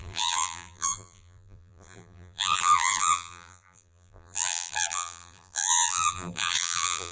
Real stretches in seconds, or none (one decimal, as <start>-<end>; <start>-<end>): none